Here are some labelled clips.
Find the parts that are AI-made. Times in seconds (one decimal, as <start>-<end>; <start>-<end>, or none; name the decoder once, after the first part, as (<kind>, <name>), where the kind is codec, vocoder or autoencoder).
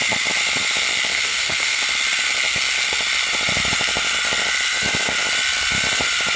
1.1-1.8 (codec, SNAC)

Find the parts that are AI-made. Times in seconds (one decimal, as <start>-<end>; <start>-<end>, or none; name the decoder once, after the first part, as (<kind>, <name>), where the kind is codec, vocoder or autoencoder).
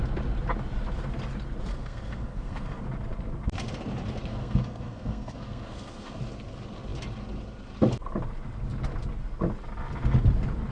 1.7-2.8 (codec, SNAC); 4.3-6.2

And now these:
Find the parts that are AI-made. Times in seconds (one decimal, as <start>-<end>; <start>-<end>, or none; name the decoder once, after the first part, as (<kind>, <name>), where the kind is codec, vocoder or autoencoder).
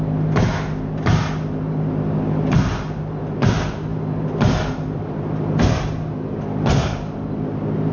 none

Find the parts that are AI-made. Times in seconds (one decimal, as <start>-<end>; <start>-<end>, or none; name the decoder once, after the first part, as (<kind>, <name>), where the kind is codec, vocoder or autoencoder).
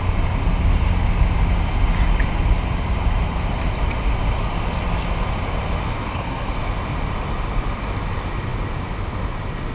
5.9-6.5 (codec, SNAC)